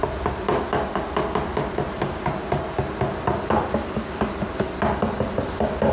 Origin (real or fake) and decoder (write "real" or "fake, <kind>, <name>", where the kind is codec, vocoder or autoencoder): real